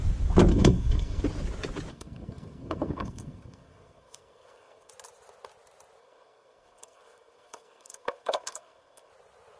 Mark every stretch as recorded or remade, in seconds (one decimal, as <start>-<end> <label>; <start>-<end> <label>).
0.0-0.5 recorded; 0.5-1.2 remade; 1.2-1.9 recorded; 1.9-4.9 remade; 4.9-6.0 recorded; 6.0-9.1 remade; 9.1-9.6 recorded